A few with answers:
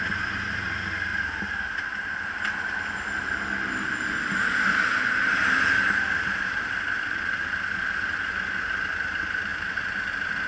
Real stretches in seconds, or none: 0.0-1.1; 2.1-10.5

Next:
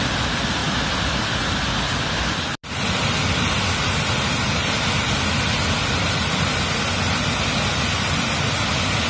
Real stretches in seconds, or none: 0.0-9.1

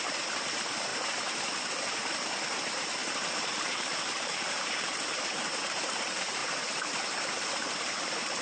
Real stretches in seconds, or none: none

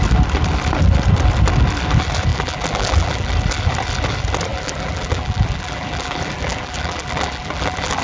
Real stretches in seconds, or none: 0.0-2.3; 3.3-4.5